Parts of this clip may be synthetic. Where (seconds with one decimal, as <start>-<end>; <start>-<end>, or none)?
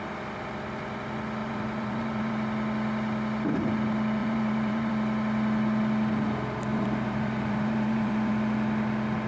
1.4-2.3; 4.2-4.9; 6.7-8.3